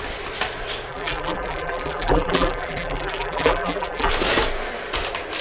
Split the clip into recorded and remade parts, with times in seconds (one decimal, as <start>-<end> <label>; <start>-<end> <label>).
0.0-0.9 recorded; 0.9-4.1 remade; 4.1-5.4 recorded